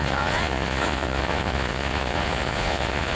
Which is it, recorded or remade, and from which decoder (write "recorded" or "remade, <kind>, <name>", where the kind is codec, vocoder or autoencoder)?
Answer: remade, vocoder, Vocos